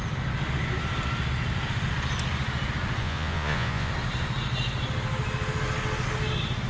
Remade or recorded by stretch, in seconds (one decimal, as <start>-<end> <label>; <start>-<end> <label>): 0.0-3.0 recorded; 3.0-3.9 remade; 3.9-6.7 recorded